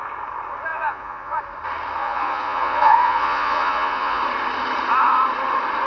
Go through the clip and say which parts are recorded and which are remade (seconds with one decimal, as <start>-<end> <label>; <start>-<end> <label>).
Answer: 0.0-0.7 recorded; 0.7-1.4 remade; 1.4-2.0 recorded; 2.0-4.2 remade; 4.2-5.9 recorded